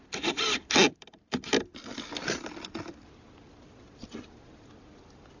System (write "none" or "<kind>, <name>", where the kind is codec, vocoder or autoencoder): none